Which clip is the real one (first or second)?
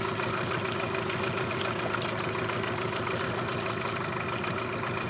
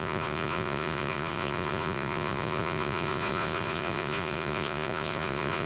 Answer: first